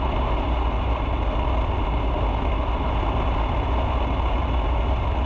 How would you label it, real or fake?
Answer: real